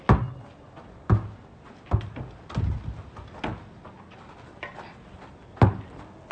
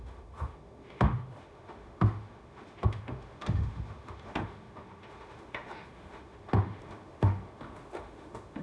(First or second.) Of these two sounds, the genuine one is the first